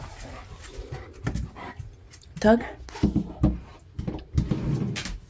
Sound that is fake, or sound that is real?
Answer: real